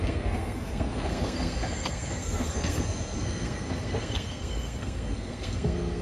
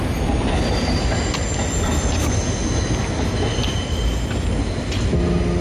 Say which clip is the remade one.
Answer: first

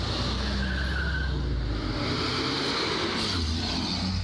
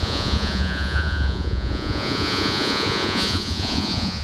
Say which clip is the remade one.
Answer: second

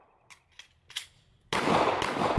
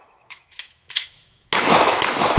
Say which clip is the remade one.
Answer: second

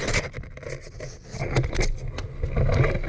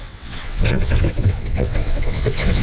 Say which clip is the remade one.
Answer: second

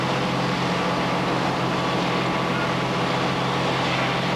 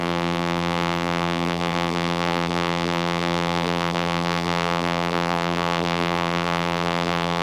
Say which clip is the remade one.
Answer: second